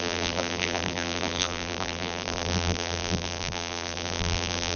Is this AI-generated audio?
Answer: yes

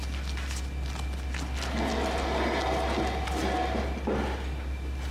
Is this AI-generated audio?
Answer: no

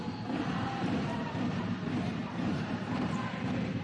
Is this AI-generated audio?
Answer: yes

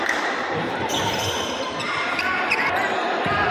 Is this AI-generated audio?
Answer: yes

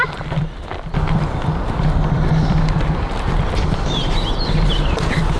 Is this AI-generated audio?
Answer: yes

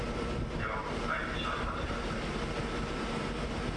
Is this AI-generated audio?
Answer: yes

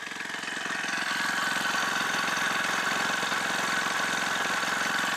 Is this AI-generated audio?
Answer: no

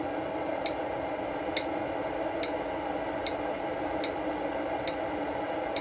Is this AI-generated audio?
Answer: no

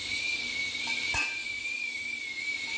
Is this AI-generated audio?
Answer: no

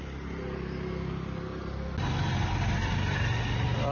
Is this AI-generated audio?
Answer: no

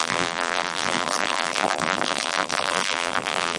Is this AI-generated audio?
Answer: yes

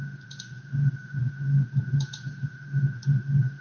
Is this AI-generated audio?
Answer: no